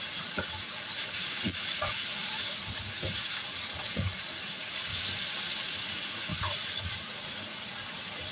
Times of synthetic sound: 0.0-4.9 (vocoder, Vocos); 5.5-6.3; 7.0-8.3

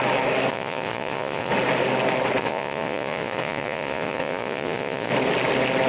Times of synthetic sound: 0.5-1.5 (vocoder, Vocos); 2.4-5.1